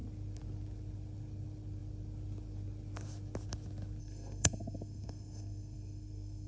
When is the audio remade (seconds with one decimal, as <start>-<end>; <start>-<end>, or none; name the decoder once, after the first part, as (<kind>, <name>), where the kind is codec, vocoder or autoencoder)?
4.0-6.5 (codec, SNAC)